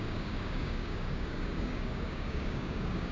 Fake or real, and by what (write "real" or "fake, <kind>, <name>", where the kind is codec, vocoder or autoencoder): fake, codec, DAC